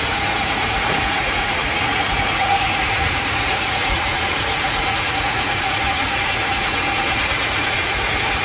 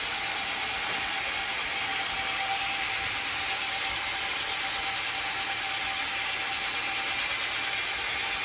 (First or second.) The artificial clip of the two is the first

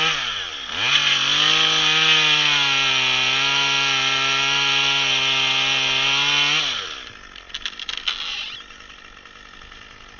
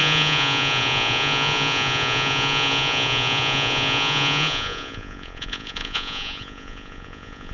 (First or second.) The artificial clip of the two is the second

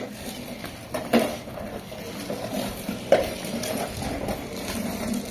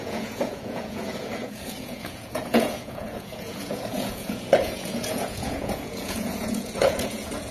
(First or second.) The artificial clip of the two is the second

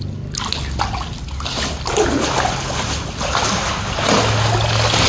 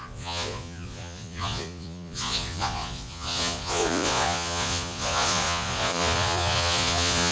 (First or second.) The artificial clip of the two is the second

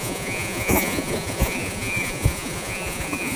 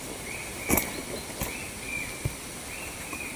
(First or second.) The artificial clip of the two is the first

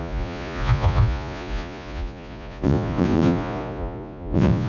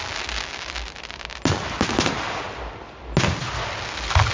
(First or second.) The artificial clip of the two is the first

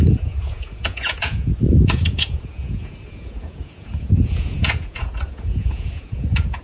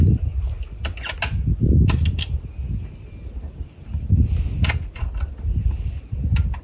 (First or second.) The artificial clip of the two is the first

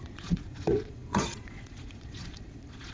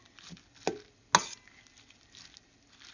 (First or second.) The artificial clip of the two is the first